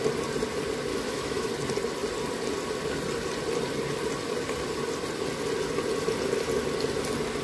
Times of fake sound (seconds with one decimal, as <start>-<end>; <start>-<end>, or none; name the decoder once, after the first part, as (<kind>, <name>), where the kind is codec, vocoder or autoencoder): 0.9-1.5 (autoencoder, DAC-VAE)